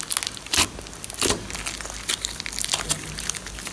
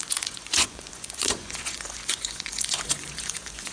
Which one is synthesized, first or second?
second